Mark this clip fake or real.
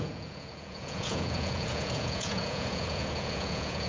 fake